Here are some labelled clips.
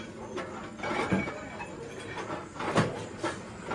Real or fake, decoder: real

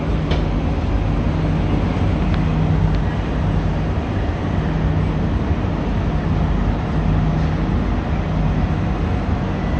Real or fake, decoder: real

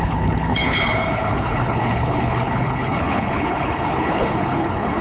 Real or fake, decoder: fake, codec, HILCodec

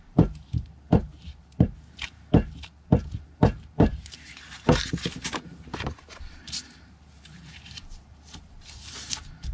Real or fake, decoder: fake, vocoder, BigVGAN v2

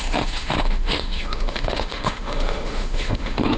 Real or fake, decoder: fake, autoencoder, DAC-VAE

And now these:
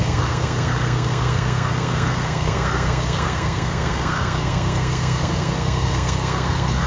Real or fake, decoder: fake, codec, SNAC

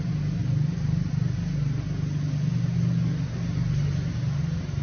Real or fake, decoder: real